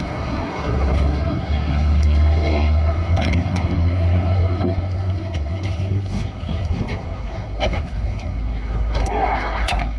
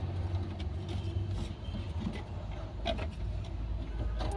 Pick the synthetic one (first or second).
first